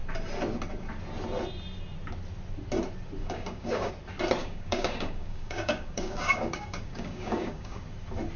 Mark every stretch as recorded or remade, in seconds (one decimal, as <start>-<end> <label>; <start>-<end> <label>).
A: 0.0-3.2 recorded; 3.2-3.9 remade; 3.9-4.4 recorded; 4.4-7.8 remade; 7.8-8.4 recorded